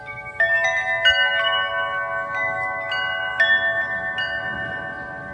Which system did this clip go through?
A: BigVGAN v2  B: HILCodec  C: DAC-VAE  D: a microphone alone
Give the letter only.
D